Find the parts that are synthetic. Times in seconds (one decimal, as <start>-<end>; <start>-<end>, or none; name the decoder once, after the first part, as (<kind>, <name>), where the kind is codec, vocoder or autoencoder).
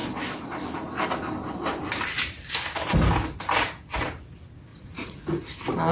4.7-5.4 (vocoder, Vocos)